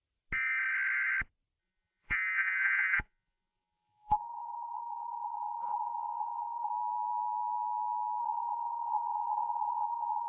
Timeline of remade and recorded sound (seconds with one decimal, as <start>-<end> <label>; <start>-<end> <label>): 0.0-1.6 recorded; 1.6-6.7 remade; 6.7-8.2 recorded; 8.2-10.3 remade

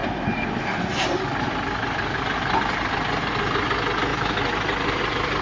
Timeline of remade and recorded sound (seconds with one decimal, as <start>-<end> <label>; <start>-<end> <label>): 0.0-5.4 recorded

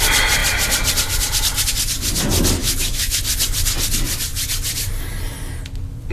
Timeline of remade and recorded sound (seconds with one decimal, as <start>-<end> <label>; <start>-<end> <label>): 0.0-2.6 recorded; 2.6-3.2 remade; 3.2-6.1 recorded

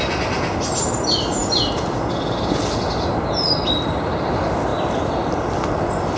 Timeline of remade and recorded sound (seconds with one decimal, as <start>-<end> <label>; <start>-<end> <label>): 0.0-6.2 recorded

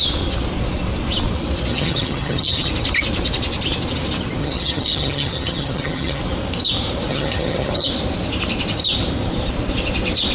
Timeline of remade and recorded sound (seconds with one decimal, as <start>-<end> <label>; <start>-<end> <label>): 0.0-1.7 recorded; 1.7-2.7 remade; 2.7-4.4 recorded; 4.4-6.2 remade; 6.2-7.1 recorded; 7.1-7.9 remade; 7.9-10.3 recorded

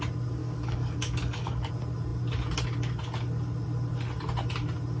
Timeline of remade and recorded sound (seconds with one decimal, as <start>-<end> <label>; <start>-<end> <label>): 0.0-0.4 recorded; 0.4-1.7 remade; 1.7-5.0 recorded